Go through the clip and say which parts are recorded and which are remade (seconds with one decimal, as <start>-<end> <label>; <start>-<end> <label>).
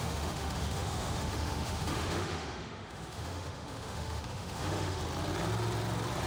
0.0-5.0 remade; 5.0-6.3 recorded